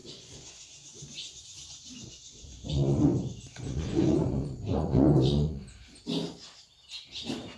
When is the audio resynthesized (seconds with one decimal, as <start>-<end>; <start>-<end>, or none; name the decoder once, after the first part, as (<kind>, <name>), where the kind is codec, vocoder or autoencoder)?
0.0-5.6 (vocoder, Vocos)